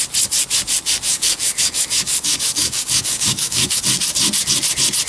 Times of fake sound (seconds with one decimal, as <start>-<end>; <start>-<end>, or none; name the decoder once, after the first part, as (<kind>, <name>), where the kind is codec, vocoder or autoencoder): 1.1-3.8 (codec, DAC)